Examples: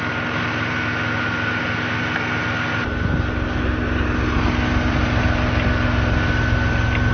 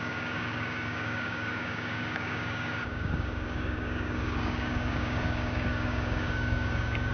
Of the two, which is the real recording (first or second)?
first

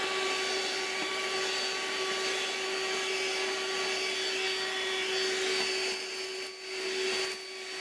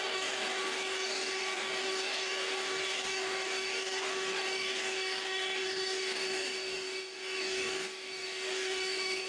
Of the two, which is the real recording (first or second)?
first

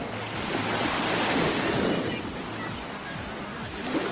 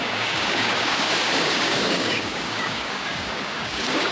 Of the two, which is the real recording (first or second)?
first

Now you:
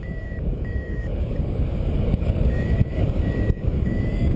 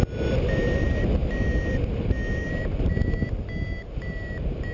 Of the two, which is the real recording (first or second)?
second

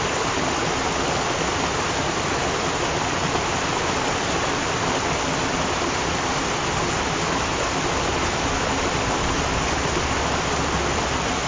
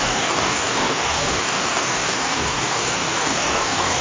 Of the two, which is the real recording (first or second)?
first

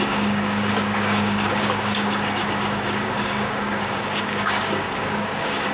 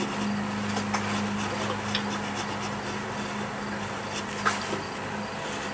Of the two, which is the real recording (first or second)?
second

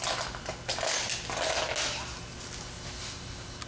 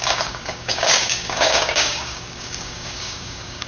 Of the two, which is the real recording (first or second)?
first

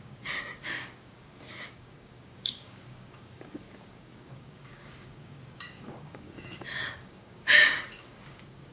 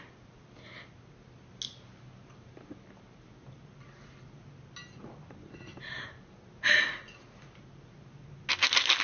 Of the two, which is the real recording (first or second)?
second